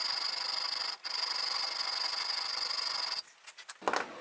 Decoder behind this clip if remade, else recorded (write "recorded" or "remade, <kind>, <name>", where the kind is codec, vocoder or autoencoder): recorded